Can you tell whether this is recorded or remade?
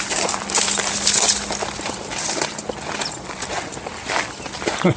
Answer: recorded